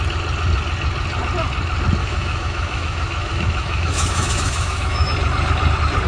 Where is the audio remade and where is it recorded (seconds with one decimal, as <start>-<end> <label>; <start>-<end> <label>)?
0.0-2.0 recorded; 2.0-5.1 remade; 5.1-6.1 recorded